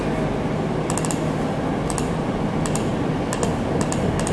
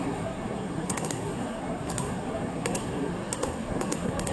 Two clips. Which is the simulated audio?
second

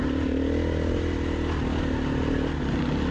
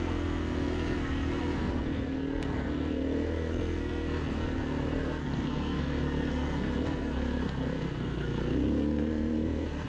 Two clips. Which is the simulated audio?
second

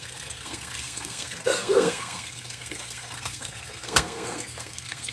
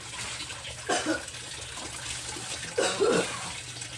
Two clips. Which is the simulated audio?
first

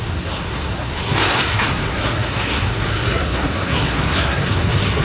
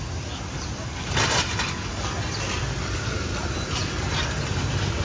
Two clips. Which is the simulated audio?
first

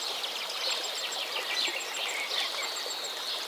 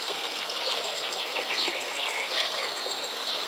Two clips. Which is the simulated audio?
second